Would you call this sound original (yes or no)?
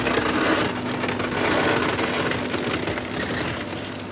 yes